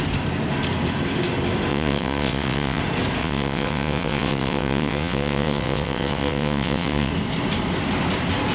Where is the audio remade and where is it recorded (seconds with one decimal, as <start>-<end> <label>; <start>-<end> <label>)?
0.0-1.7 recorded; 1.7-2.8 remade; 2.8-3.2 recorded; 3.2-7.1 remade; 7.1-8.5 recorded